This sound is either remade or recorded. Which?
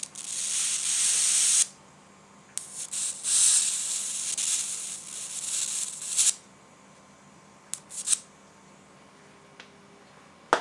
recorded